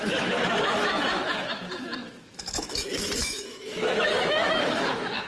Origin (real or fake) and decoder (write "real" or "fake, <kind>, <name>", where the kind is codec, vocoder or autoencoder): fake, autoencoder, DAC-VAE